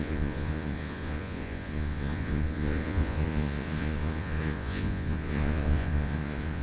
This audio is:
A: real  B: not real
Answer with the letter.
B